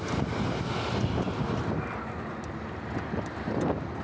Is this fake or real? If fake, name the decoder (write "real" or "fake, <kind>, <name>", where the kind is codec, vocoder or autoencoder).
real